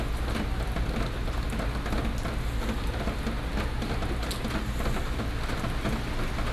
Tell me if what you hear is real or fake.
real